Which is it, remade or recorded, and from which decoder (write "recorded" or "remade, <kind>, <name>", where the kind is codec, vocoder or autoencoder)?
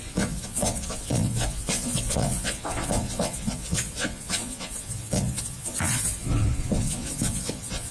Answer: remade, vocoder, Vocos